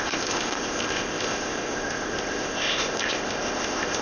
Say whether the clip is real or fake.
fake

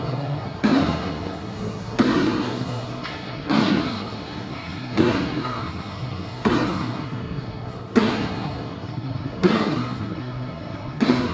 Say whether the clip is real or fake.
fake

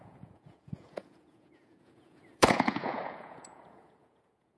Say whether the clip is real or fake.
fake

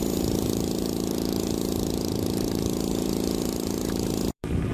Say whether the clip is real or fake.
fake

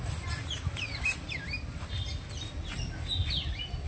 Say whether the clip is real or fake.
real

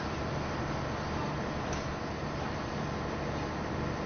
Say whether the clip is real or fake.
real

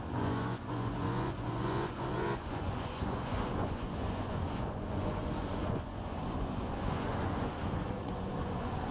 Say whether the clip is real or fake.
fake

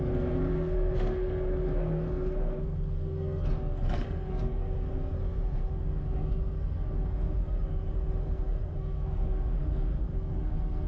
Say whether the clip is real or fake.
fake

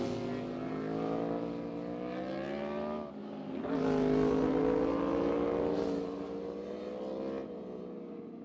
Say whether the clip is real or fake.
real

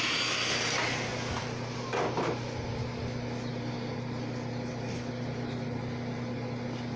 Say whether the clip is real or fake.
real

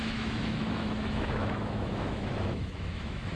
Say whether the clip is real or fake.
fake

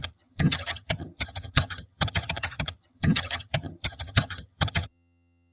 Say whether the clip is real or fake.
fake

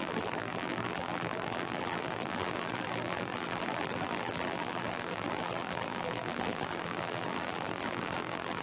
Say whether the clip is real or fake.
fake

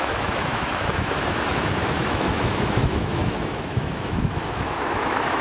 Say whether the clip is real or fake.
fake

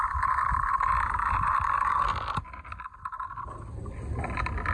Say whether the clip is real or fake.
real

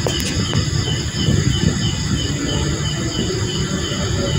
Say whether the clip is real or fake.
real